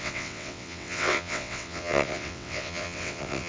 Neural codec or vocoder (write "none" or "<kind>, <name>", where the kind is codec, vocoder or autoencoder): vocoder, WaveNeXt